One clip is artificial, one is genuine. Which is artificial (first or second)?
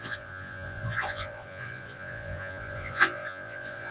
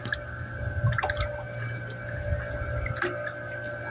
first